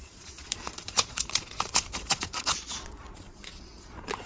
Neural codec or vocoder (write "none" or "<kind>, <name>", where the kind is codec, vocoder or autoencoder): vocoder, Vocos